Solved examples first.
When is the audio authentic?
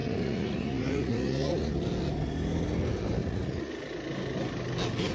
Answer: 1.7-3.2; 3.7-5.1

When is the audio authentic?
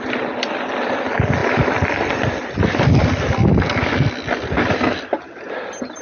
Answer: 0.0-6.0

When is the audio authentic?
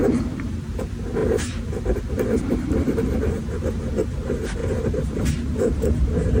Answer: 4.6-5.3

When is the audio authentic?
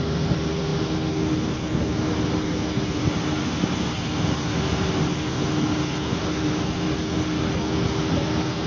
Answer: 0.0-8.7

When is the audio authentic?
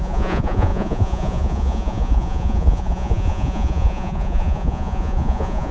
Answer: none